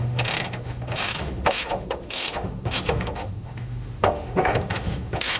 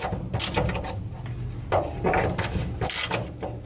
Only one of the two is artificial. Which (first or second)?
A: first